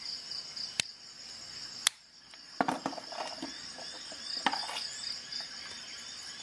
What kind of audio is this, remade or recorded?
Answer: recorded